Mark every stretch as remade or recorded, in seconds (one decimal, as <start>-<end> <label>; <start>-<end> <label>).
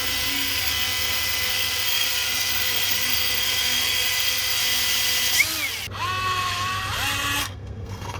0.0-4.6 remade; 4.6-7.4 recorded; 7.4-8.2 remade